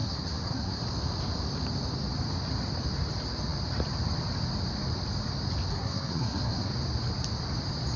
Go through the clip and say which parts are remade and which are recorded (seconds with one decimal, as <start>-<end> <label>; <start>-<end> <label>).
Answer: 0.0-0.8 remade; 0.8-5.7 recorded; 5.7-6.7 remade; 6.7-8.0 recorded